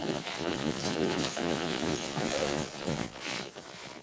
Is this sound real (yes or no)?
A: no